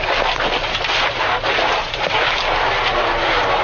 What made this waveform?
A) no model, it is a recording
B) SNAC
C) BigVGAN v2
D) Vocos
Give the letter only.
A